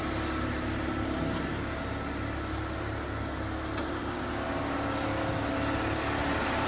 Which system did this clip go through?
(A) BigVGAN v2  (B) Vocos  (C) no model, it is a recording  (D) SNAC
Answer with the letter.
C